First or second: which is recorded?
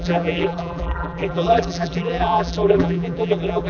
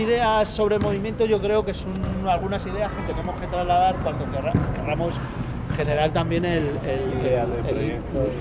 second